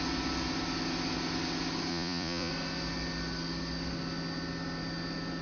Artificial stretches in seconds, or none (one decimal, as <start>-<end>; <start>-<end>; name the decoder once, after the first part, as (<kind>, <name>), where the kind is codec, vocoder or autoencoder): 1.9-2.5 (vocoder, Vocos)